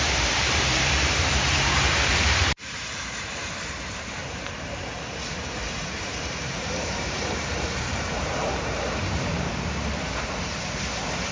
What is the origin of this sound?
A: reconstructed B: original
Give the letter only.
A